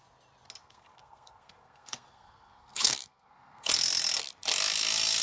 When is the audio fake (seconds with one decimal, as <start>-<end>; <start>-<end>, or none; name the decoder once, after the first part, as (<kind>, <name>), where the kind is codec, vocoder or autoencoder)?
0.6-3.7 (codec, SNAC)